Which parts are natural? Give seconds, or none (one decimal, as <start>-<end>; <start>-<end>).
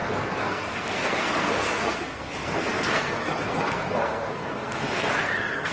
none